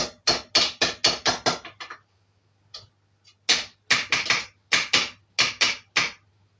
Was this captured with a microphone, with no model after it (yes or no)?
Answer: yes